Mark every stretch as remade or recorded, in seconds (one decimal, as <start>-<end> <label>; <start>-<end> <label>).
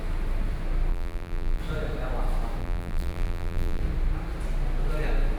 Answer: 0.0-0.9 recorded; 0.9-1.6 remade; 1.6-2.6 recorded; 2.6-3.8 remade; 3.8-5.4 recorded